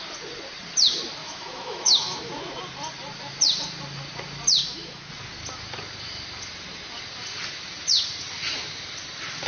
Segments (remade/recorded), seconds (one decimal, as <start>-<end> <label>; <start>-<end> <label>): 0.0-1.2 recorded; 1.2-2.3 remade; 2.3-4.6 recorded; 4.6-5.1 remade; 5.1-9.5 recorded